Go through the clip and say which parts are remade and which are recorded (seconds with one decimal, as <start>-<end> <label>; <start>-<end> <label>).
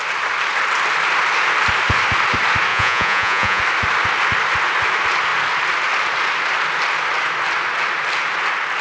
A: 0.0-2.7 recorded; 2.7-3.6 remade; 3.6-8.8 recorded